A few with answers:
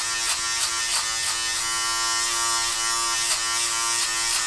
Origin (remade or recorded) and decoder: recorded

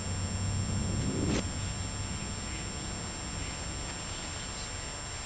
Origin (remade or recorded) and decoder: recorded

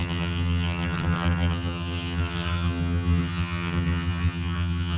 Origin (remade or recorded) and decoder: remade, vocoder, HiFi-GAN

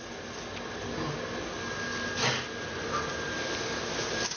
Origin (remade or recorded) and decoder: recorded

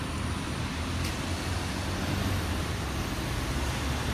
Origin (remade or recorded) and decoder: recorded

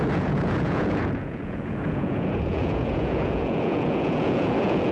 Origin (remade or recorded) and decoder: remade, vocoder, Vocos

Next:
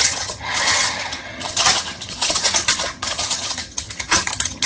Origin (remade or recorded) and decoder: remade, vocoder, HiFi-GAN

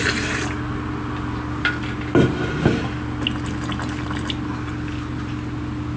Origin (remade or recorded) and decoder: recorded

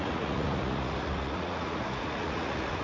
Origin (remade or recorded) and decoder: remade, vocoder, Vocos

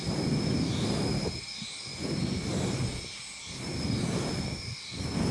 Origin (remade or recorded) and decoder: recorded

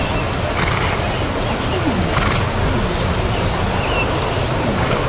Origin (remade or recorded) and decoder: recorded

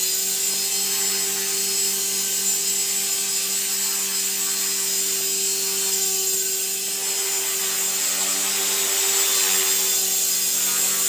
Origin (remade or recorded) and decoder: recorded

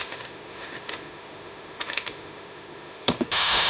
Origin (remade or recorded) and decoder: remade, autoencoder, DAC-VAE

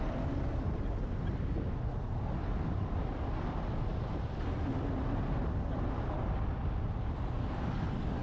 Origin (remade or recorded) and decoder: recorded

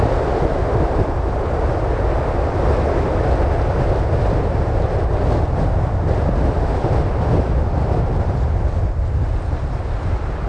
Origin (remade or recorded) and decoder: recorded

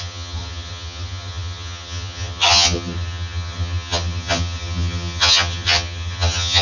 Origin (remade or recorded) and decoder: remade, vocoder, HiFi-GAN